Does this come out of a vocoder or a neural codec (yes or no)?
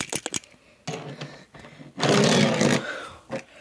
no